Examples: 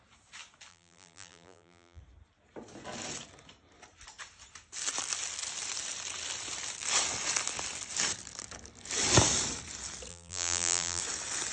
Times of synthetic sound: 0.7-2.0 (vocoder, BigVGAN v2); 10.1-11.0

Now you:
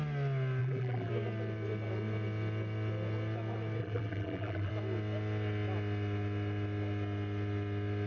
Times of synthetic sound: 0.6-1.1 (vocoder, BigVGAN v2); 3.8-4.7

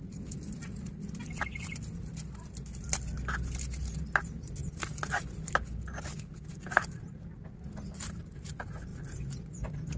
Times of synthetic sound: none

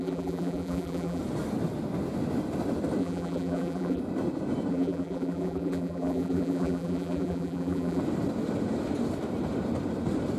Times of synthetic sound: 0.0-1.2 (vocoder, BigVGAN v2); 3.0-4.0; 4.7-8.0

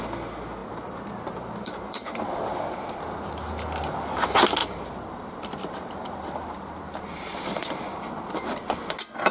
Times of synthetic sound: 0.6-2.2 (vocoder, BigVGAN v2); 4.6-8.7

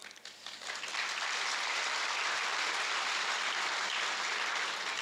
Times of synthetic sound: none

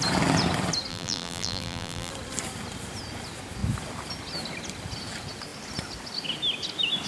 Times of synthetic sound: 0.9-2.1 (vocoder, BigVGAN v2)